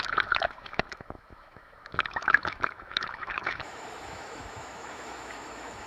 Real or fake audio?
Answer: fake